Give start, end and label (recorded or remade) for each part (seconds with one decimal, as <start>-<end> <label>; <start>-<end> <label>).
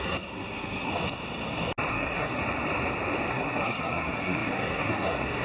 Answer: 0.0-0.9 remade; 0.9-1.9 recorded; 1.9-2.4 remade; 2.4-3.3 recorded; 3.3-5.4 remade